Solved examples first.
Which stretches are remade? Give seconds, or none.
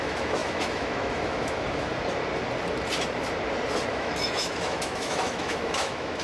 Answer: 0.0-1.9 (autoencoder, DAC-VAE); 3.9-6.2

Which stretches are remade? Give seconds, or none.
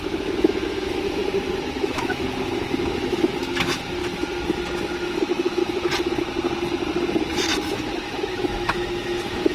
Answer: 0.0-1.2 (autoencoder, DAC-VAE); 1.8-4.0; 5.0-5.6; 7.7-9.5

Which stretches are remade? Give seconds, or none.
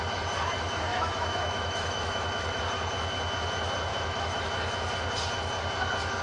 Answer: 0.9-2.6 (autoencoder, DAC-VAE); 3.9-4.5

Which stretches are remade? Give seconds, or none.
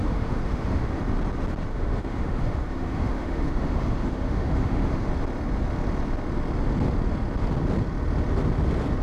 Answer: 0.0-1.0 (autoencoder, DAC-VAE); 1.7-5.1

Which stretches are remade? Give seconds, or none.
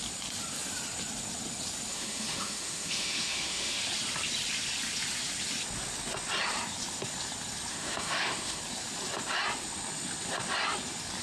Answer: 1.9-3.8 (autoencoder, DAC-VAE); 7.7-8.6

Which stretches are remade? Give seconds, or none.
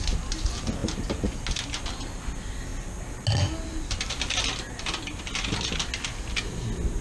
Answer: none